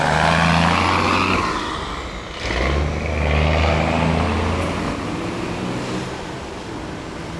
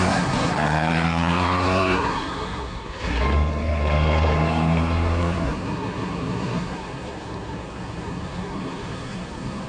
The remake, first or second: second